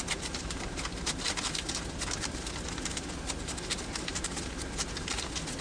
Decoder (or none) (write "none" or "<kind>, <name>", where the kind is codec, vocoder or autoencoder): none